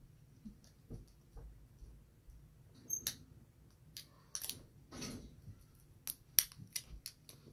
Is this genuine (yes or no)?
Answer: yes